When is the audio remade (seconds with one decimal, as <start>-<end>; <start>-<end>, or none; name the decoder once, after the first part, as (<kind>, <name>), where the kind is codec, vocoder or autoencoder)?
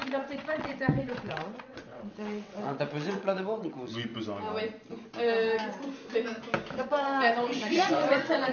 0.0-4.1 (vocoder, WaveNeXt); 6.8-8.5